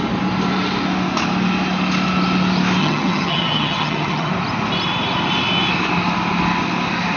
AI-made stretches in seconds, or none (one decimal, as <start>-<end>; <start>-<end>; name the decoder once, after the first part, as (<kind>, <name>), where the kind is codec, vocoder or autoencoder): 2.8-4.3 (vocoder, HiFi-GAN)